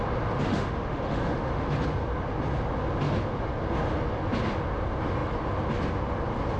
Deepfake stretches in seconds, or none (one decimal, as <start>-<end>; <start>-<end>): 0.5-1.6